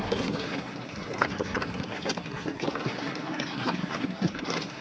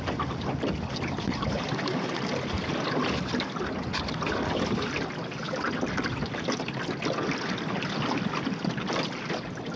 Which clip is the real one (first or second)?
second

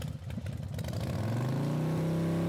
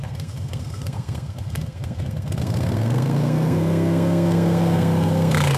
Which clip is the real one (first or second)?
first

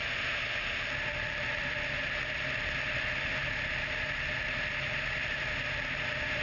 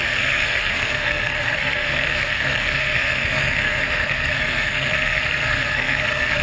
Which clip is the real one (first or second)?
first